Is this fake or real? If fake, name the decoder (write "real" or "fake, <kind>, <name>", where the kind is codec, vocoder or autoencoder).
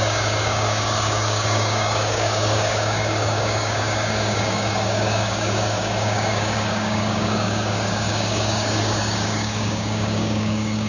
fake, codec, DAC